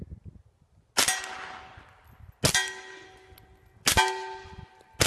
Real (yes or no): yes